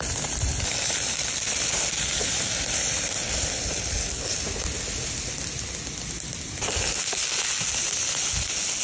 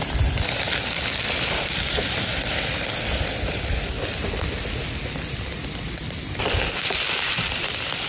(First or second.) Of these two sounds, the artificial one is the second